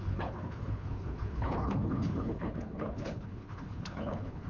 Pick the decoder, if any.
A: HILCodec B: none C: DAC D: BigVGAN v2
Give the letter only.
A